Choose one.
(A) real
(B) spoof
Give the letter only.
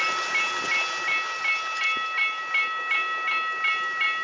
A